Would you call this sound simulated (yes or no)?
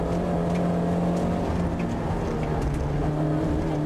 no